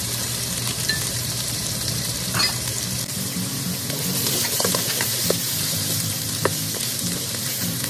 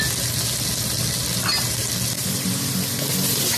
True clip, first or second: second